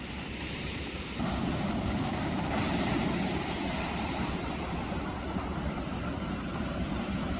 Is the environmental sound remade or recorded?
remade